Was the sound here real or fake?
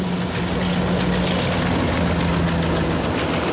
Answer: real